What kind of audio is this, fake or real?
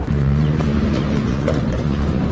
fake